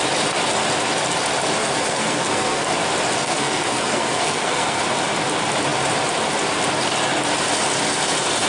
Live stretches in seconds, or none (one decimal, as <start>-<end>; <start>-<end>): 0.0-1.6; 2.7-3.2; 4.8-8.5